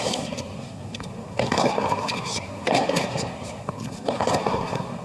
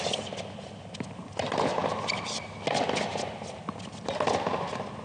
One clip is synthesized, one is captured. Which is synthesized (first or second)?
first